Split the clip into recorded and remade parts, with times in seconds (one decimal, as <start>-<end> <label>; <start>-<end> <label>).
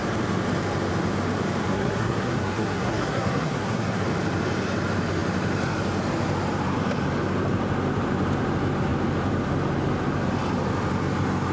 0.0-1.7 recorded; 1.7-4.0 remade; 4.0-11.5 recorded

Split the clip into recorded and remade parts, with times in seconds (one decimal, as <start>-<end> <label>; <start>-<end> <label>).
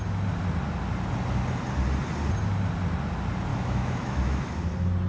0.0-3.5 recorded; 3.5-4.5 remade; 4.5-5.1 recorded